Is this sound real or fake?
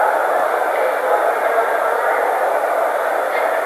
real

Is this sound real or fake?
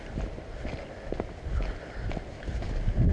real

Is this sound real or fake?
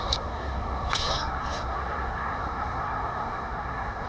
fake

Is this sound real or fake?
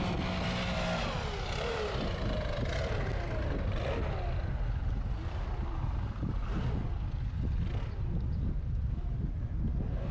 real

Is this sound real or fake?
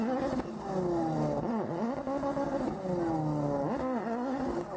real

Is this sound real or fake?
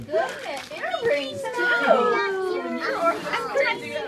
real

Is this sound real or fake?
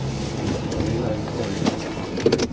real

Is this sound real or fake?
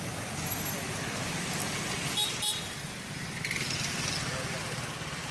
real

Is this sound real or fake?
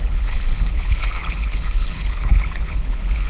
fake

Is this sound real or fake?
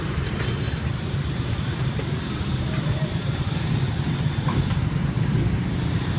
fake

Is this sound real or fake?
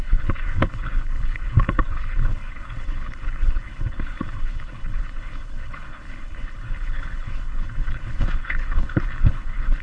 fake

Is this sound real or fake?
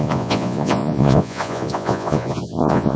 fake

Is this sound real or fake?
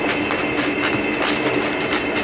real